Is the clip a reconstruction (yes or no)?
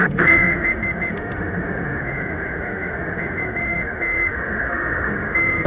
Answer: yes